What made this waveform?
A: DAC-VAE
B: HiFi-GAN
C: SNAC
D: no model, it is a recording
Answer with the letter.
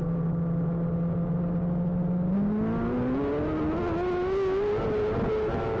D